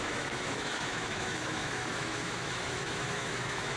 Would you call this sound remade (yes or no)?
yes